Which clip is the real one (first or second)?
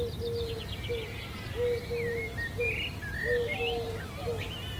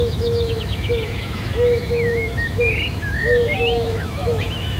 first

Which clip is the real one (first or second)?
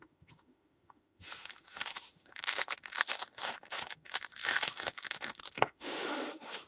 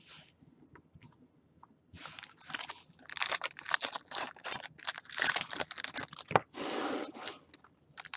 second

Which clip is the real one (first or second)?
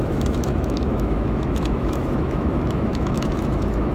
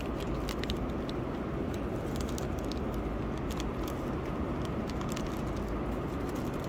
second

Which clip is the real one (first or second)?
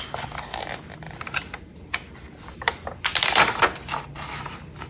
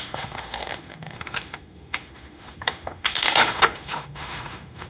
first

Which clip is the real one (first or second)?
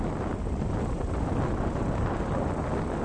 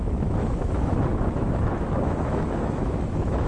first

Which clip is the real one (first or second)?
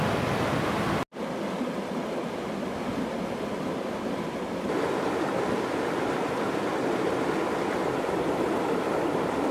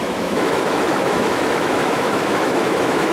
first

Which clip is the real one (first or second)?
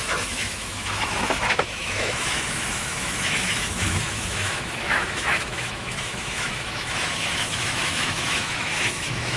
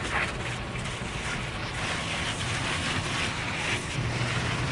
second